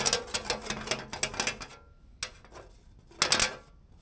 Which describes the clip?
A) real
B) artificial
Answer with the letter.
A